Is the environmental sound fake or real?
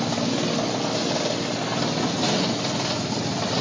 real